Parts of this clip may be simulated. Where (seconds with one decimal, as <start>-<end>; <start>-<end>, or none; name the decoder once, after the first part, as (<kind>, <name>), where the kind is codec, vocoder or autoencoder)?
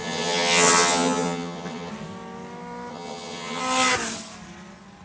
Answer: 0.0-1.9 (vocoder, HiFi-GAN); 2.9-3.6